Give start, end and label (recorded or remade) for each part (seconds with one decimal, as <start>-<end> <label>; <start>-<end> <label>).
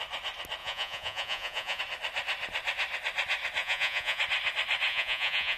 0.0-0.6 recorded; 0.6-1.8 remade; 1.8-3.6 recorded; 3.6-4.2 remade; 4.2-4.9 recorded; 4.9-5.6 remade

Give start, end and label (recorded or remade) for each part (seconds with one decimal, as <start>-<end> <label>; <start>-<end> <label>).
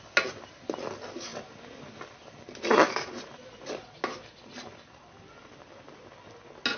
0.0-6.8 recorded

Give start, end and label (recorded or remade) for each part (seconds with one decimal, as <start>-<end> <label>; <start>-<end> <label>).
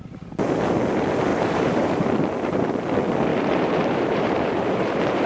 0.0-1.3 recorded; 1.3-2.8 remade; 2.8-3.3 recorded; 3.3-5.3 remade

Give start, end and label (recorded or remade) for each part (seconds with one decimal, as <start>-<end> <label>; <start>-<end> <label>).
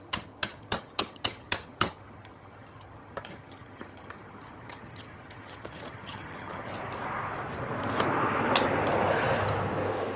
0.0-6.7 remade; 6.7-10.2 recorded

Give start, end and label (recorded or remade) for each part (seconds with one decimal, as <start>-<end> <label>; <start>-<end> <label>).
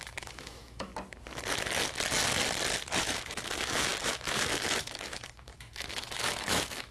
0.0-0.9 remade; 0.9-3.0 recorded; 3.0-6.9 remade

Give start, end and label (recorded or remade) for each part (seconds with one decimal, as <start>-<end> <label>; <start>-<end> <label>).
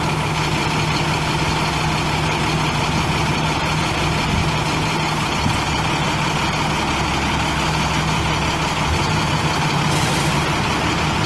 0.0-11.3 recorded